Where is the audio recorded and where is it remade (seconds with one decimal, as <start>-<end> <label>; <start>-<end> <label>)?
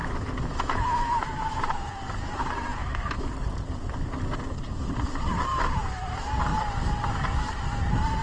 0.0-1.9 remade; 1.9-2.8 recorded; 2.8-3.3 remade; 3.3-5.5 recorded; 5.5-6.1 remade; 6.1-8.2 recorded